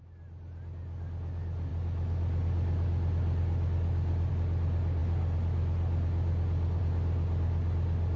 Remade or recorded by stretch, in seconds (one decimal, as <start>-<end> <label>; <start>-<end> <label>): 0.0-8.2 recorded